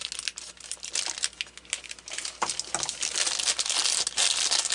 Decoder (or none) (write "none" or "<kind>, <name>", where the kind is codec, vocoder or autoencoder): none